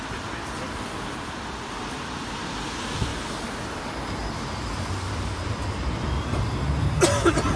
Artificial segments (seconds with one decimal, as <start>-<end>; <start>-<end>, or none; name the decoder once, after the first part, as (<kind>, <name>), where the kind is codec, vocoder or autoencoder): 3.1-3.8 (vocoder, BigVGAN v2)